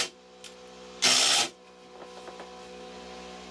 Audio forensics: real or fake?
real